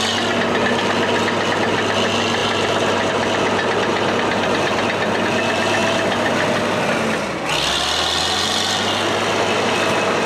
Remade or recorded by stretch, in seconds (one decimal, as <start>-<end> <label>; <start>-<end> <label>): 0.0-2.4 recorded; 2.4-3.1 remade; 3.1-3.9 recorded; 3.9-4.7 remade; 4.7-10.3 recorded